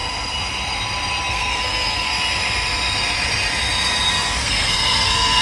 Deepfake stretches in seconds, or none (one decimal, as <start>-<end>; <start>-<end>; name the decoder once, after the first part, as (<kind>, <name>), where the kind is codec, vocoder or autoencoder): 1.3-2.1 (codec, SNAC); 4.4-5.4